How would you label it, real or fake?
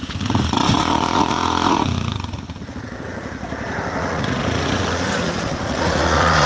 fake